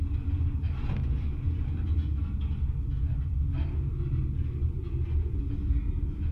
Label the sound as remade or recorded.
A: recorded